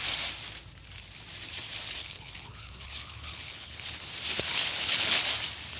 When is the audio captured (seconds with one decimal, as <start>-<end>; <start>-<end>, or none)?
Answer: 0.0-2.0; 4.1-4.5; 5.2-5.8

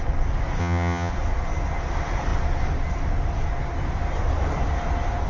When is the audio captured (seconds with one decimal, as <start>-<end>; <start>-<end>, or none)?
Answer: 0.0-0.6; 1.1-5.3